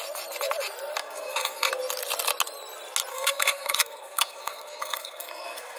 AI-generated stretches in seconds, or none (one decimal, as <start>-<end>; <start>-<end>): 1.0-1.7; 3.1-5.8